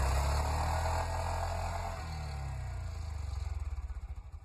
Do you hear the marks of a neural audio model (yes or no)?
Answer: no